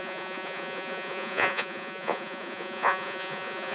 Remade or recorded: remade